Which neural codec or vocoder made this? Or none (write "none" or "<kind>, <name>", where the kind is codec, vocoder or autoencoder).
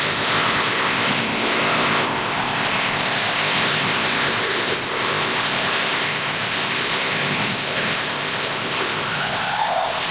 codec, ZipCodec